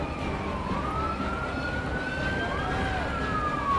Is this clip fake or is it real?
real